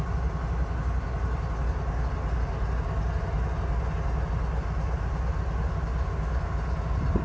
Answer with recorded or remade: recorded